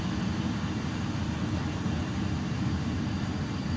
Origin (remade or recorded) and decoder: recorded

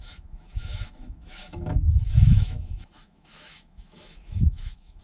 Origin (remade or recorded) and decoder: remade, autoencoder, DAC-VAE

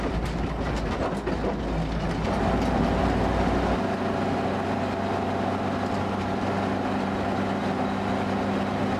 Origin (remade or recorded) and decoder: recorded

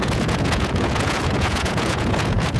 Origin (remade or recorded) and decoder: remade, vocoder, Vocos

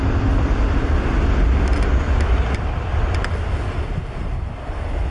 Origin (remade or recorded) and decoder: recorded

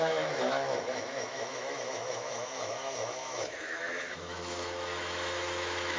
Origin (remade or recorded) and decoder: remade, autoencoder, DAC-VAE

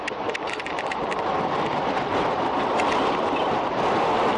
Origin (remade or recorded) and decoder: recorded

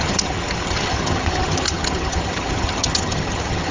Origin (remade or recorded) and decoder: remade, vocoder, HiFi-GAN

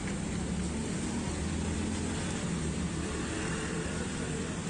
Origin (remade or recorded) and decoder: recorded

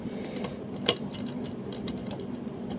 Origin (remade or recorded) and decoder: recorded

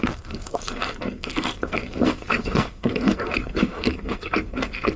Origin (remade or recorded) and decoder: remade, codec, SNAC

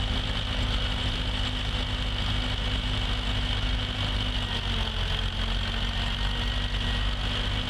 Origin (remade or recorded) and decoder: recorded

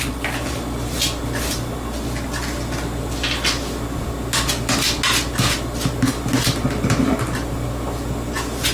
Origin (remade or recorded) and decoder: recorded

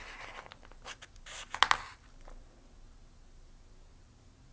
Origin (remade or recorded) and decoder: recorded